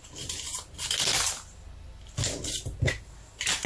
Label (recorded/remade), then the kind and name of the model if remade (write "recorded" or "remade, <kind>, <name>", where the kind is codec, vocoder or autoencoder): recorded